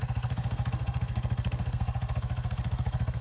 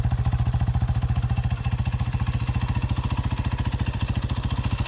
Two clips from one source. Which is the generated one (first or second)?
first